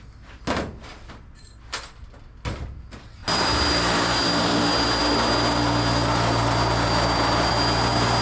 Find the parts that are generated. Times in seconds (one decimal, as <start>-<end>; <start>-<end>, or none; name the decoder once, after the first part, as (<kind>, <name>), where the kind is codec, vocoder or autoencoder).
3.2-4.6 (vocoder, BigVGAN v2)